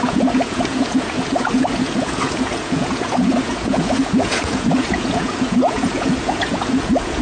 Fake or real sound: fake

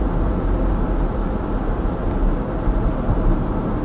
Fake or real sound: real